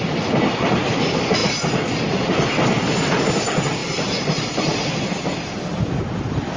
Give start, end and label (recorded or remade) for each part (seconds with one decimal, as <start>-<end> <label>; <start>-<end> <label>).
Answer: 0.0-6.6 recorded